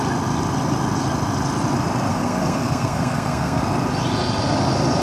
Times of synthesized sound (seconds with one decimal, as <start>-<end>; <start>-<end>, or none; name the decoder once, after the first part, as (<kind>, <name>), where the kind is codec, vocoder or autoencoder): 2.1-3.6 (codec, SNAC)